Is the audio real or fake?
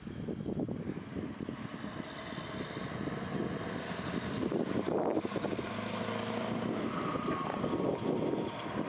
real